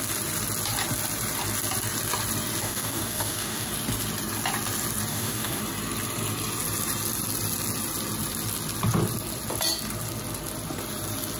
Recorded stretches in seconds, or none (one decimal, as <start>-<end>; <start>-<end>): 0.0-2.6; 3.7-5.1; 5.6-11.4